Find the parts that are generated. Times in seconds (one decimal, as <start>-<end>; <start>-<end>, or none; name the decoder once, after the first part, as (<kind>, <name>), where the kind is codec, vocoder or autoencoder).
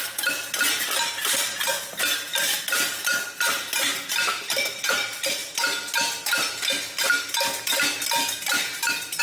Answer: none